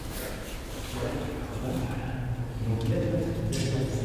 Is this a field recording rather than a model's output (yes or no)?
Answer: yes